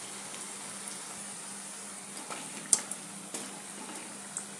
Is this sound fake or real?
real